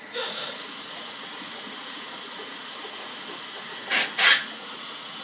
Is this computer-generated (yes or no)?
yes